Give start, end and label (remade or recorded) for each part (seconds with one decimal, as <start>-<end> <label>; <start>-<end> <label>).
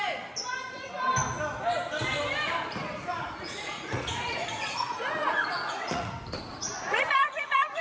0.0-3.1 recorded; 3.1-6.1 remade; 6.1-6.5 recorded; 6.5-7.8 remade